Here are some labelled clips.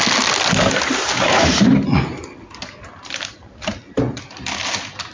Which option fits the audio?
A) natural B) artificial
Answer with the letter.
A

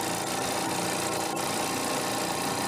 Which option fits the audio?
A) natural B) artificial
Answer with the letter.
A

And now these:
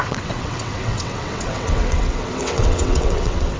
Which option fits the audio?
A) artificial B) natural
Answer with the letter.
A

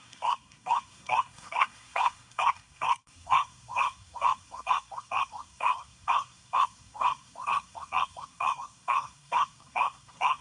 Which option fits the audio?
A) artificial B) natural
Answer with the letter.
A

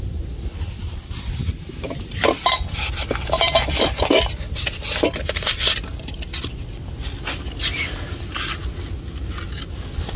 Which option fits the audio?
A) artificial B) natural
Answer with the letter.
B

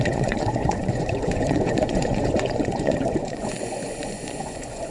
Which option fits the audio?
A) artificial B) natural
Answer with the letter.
A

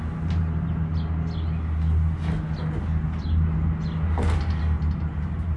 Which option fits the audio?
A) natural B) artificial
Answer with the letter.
A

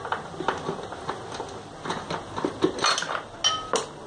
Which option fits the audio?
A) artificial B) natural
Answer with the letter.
B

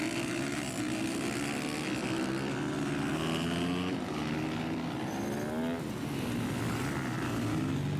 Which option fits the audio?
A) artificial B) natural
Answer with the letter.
B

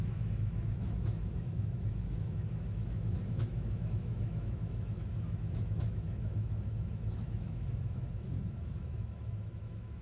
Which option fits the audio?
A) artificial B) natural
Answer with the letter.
A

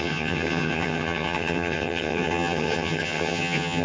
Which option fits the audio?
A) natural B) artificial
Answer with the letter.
B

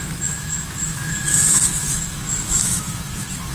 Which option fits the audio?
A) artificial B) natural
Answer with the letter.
A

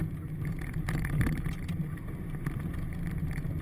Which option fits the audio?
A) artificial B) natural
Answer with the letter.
A